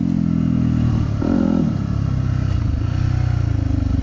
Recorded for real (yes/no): yes